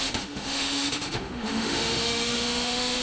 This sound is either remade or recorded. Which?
remade